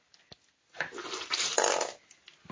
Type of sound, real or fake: real